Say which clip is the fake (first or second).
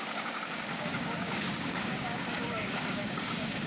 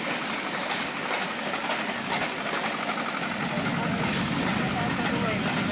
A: first